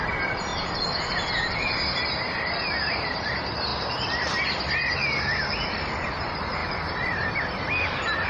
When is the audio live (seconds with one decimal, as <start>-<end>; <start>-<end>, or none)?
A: 0.5-2.2; 3.7-5.2